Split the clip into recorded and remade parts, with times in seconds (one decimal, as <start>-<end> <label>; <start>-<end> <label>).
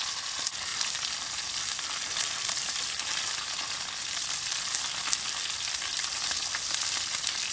0.0-7.5 recorded